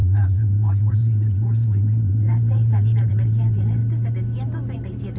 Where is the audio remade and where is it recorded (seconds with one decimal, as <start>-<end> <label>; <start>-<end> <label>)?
0.0-3.8 remade; 3.8-5.2 recorded